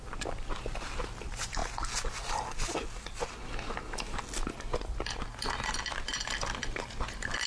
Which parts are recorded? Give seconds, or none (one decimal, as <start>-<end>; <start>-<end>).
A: 1.6-5.7